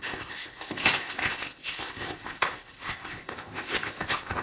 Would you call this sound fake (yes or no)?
yes